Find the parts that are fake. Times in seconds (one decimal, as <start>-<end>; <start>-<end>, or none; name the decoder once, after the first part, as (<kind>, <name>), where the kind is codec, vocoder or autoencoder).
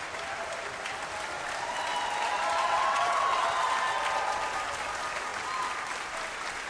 2.6-3.4 (vocoder, WaveNeXt)